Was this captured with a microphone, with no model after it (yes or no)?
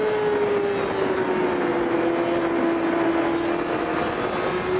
yes